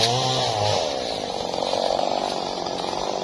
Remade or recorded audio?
recorded